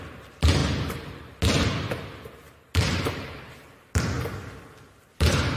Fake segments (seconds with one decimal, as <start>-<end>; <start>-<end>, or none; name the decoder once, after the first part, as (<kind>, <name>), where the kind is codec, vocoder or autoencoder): none